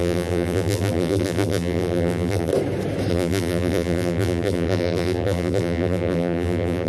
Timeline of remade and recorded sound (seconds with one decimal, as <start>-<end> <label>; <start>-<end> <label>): 0.0-2.5 remade; 2.5-3.1 recorded; 3.1-6.9 remade